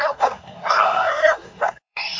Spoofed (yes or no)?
yes